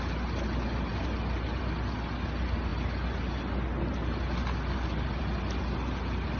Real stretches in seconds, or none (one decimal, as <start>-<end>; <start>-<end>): 0.0-6.4